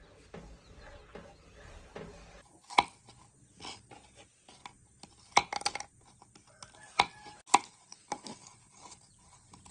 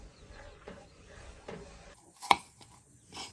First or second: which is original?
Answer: first